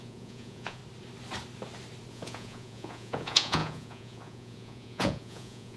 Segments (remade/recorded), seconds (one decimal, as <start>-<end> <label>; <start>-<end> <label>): 0.0-0.8 remade; 0.8-2.1 recorded; 2.1-5.8 remade